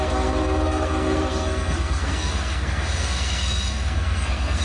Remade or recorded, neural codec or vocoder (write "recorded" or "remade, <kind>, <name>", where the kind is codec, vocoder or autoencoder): remade, codec, SNAC